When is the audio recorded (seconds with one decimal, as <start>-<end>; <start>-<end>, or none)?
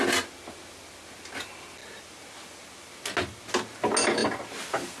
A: 0.0-5.0